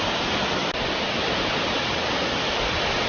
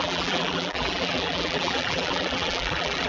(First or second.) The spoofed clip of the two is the second